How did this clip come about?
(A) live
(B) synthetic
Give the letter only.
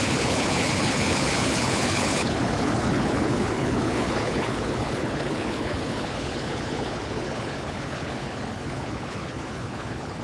B